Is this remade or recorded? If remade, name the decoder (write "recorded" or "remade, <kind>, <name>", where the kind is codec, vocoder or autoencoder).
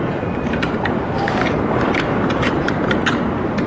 remade, vocoder, BigVGAN v2